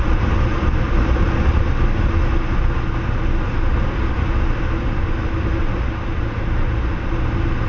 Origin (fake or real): real